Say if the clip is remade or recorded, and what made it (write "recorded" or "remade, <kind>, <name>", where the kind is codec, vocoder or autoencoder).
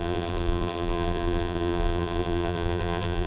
remade, vocoder, BigVGAN v2